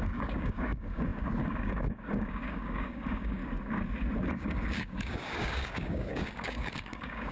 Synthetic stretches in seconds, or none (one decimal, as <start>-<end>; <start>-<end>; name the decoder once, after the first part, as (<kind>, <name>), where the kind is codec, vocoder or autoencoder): 0.0-3.4 (codec, DAC); 4.2-7.3